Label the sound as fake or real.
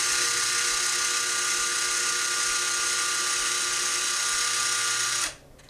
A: real